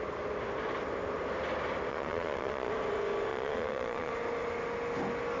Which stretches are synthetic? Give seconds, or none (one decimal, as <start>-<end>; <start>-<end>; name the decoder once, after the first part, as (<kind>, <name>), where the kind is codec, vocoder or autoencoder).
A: 1.9-2.7 (vocoder, Vocos); 3.3-4.1